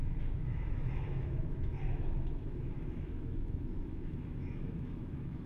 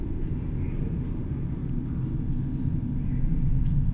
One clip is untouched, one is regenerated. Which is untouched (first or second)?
second